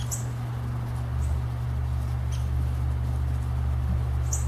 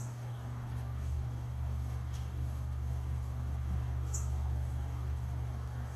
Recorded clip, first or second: first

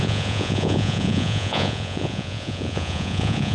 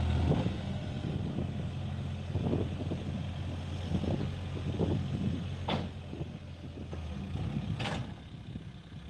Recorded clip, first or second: second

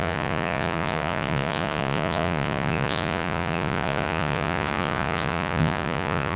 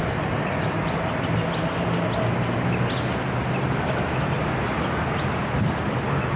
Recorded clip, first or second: second